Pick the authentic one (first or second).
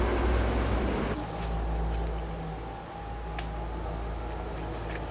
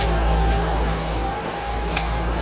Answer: first